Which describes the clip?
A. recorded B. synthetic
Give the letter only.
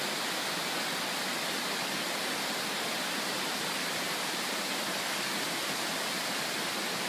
A